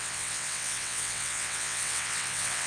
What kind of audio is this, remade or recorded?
remade